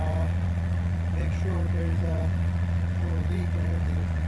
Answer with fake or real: fake